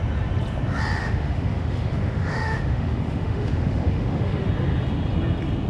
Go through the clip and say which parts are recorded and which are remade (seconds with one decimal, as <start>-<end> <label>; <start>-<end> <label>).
0.0-1.0 recorded; 1.0-4.4 remade; 4.4-5.7 recorded